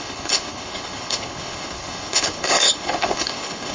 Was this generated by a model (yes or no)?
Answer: yes